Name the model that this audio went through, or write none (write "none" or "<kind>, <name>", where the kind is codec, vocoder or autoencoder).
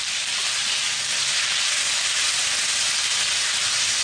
none